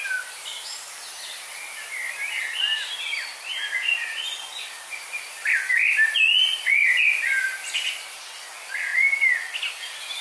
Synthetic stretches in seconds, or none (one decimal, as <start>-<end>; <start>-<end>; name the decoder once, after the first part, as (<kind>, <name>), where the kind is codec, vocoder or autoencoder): 3.1-7.2 (vocoder, BigVGAN v2)